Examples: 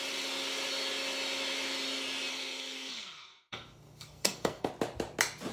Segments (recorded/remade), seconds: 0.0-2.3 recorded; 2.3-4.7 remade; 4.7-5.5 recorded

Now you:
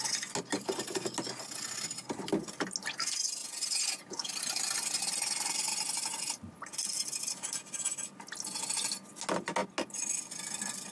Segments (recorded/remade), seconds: 0.0-3.4 recorded; 3.4-4.3 remade; 4.3-10.9 recorded

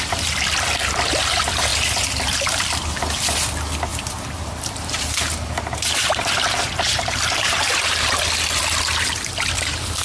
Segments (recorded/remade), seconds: 0.0-1.7 recorded; 1.7-2.6 remade; 2.6-3.9 recorded; 3.9-8.2 remade; 8.2-10.0 recorded

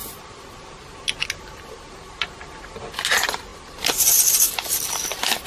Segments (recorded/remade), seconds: 0.0-5.5 recorded

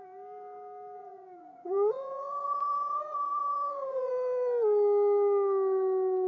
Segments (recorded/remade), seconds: 0.0-1.0 recorded; 1.0-4.1 remade; 4.1-6.3 recorded

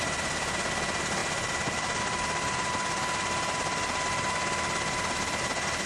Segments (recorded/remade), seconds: 0.0-5.9 recorded